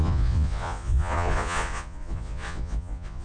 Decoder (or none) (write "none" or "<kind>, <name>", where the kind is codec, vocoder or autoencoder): vocoder, Vocos